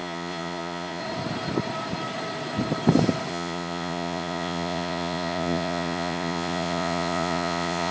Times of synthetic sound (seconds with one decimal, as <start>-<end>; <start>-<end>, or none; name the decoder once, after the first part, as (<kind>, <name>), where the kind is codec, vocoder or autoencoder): 0.0-1.0 (vocoder, Vocos); 3.3-7.9